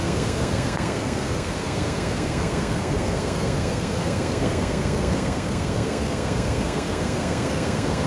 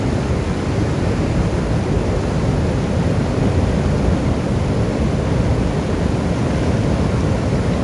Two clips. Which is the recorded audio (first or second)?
second